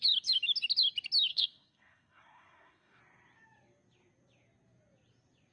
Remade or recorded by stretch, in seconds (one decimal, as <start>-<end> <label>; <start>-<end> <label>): 0.0-1.3 recorded; 1.3-3.0 remade; 3.0-5.5 recorded